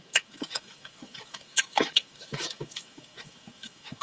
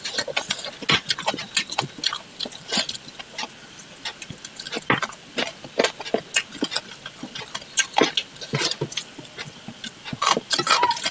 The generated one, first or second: first